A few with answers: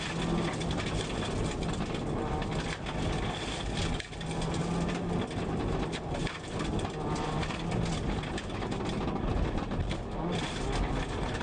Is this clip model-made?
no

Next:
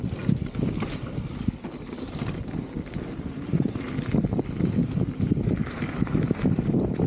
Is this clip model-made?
no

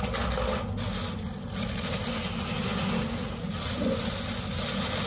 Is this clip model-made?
no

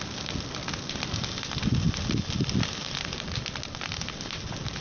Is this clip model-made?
no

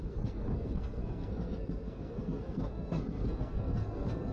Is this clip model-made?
yes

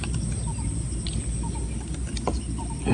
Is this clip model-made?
no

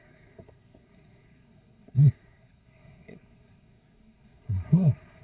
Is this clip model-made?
yes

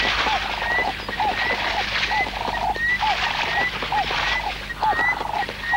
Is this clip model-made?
no